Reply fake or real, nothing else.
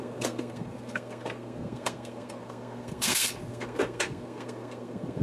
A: fake